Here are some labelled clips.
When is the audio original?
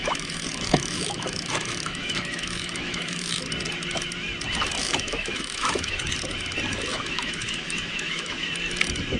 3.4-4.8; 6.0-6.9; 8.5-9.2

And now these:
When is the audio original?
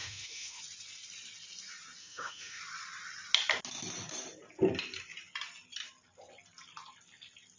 0.6-2.0; 2.6-7.6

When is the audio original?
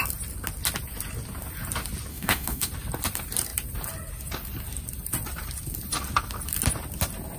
0.0-2.1; 2.7-7.4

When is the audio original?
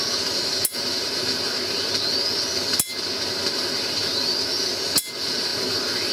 0.0-6.1